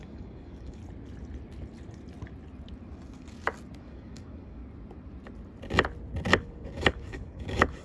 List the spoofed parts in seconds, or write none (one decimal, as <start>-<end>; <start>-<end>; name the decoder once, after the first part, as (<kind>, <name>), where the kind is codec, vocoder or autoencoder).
0.0-0.8 (codec, DAC); 3.8-4.6; 6.4-7.8